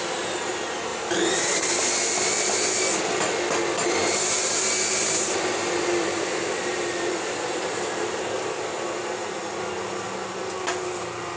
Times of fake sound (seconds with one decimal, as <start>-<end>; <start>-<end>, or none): 0.9-1.9; 4.0-8.2